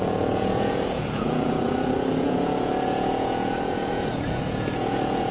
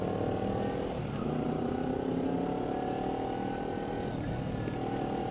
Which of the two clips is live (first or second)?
second